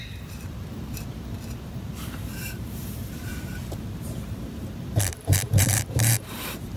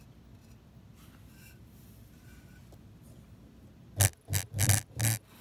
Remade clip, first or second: first